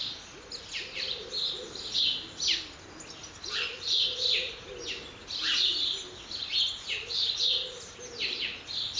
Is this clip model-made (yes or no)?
no